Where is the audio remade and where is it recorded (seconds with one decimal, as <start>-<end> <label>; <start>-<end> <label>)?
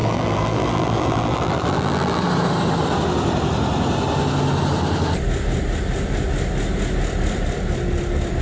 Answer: 0.0-2.2 remade; 2.2-8.4 recorded